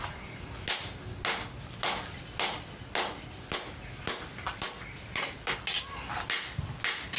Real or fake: real